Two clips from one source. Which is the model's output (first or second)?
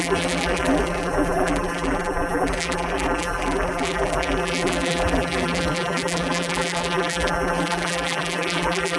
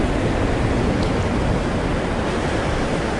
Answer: first